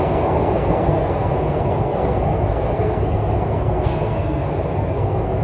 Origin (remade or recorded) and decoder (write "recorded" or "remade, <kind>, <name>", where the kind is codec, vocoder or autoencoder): remade, codec, SNAC